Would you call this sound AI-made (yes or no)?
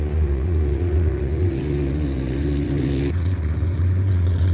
yes